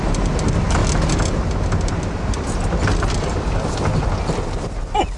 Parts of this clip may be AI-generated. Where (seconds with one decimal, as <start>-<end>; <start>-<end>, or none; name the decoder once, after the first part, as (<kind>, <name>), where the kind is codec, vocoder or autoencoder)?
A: none